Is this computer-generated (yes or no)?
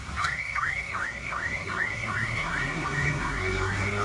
yes